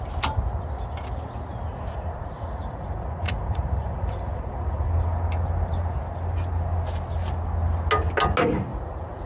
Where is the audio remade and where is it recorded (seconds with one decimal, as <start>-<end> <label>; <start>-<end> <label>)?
0.0-1.7 recorded; 1.7-4.9 remade; 4.9-8.7 recorded; 8.7-9.3 remade